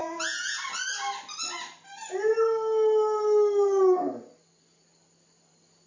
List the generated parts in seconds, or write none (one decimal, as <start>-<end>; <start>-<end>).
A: 0.0-0.6